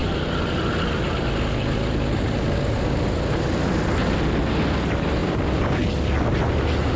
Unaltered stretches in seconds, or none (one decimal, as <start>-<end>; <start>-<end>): 0.0-7.0